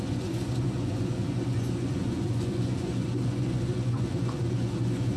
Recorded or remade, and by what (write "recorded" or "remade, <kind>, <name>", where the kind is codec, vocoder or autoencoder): remade, vocoder, Vocos